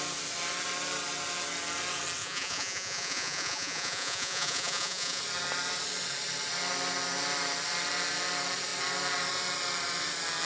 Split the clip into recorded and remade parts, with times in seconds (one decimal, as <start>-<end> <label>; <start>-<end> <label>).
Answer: 0.0-2.2 recorded; 2.2-5.2 remade; 5.2-10.5 recorded